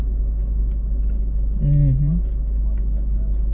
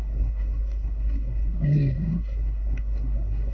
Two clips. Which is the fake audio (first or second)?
second